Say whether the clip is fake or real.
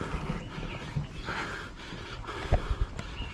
real